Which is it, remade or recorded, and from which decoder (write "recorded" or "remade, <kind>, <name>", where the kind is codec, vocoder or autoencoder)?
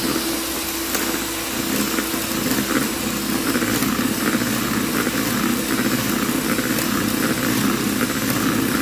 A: recorded